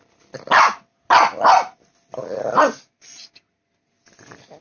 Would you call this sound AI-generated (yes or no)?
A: no